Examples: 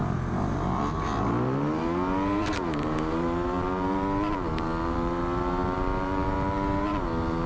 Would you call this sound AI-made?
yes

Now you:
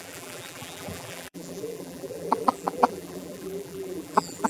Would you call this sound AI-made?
yes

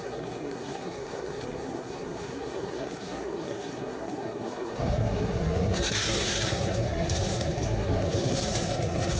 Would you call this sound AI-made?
yes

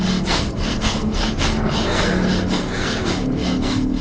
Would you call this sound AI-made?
yes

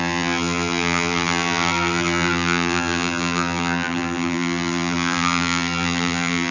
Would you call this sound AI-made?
yes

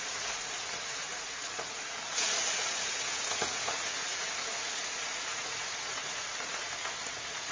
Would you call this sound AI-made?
yes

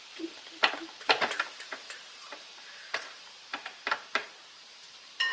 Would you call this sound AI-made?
yes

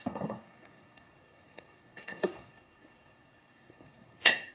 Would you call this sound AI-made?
yes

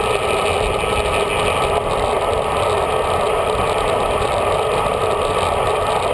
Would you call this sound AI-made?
no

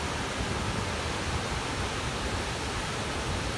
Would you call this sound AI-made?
yes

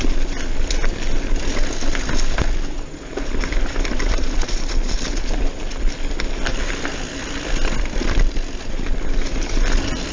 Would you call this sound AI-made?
no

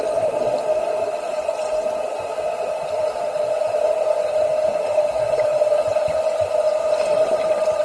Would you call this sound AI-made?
no